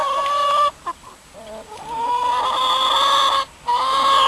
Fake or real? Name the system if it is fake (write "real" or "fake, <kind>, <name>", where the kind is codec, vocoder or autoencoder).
fake, vocoder, BigVGAN v2